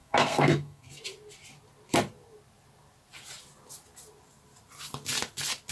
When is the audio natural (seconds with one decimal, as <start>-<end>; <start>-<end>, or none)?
0.9-5.7